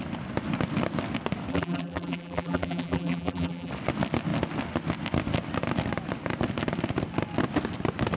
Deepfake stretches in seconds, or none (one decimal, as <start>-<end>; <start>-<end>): 1.5-3.7